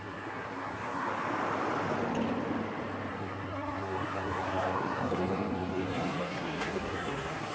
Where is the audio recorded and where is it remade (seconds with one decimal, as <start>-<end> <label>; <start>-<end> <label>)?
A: 0.0-1.1 remade; 1.1-3.1 recorded; 3.1-7.5 remade